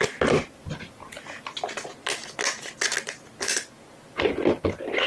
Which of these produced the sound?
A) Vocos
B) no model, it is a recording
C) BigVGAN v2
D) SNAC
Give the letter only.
B